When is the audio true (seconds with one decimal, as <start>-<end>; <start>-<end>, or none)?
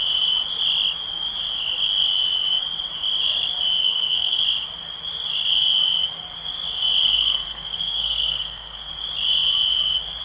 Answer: 0.0-3.8; 4.4-7.0; 8.9-10.2